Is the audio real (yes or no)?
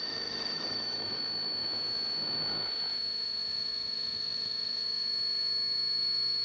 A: no